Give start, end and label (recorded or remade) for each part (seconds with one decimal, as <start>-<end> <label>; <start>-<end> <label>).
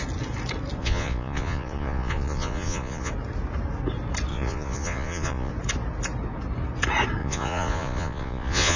0.0-0.8 recorded; 0.8-3.1 remade; 3.1-4.3 recorded; 4.3-5.5 remade; 5.5-7.2 recorded; 7.2-8.8 remade